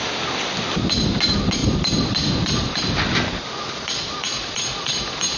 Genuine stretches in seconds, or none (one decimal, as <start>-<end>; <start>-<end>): 0.0-5.4